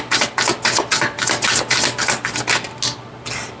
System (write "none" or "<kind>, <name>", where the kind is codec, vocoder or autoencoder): none